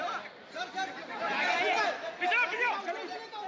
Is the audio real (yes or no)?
yes